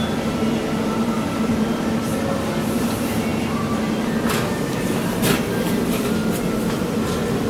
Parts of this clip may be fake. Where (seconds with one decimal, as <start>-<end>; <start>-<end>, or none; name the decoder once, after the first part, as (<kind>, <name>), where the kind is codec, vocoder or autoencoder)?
0.0-3.3 (vocoder, BigVGAN v2); 5.5-6.2; 6.7-7.5